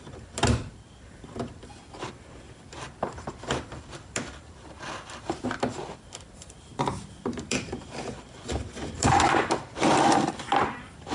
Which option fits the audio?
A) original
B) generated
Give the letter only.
B